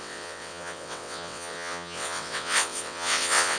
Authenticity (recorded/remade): remade